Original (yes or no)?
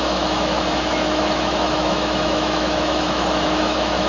no